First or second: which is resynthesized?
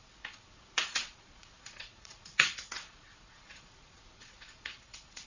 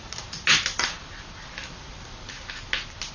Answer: first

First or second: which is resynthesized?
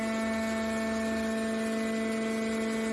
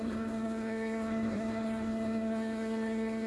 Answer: second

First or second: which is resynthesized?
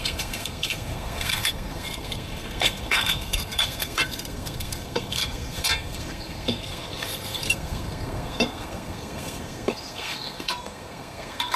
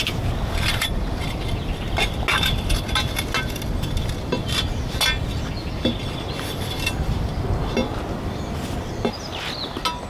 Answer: first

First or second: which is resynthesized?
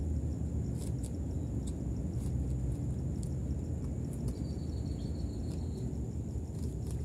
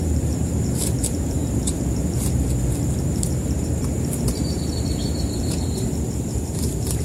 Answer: second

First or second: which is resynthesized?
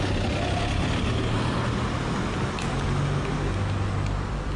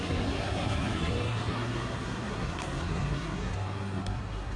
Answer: second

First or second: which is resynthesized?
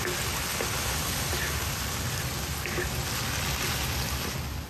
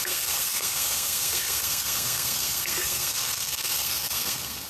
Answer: second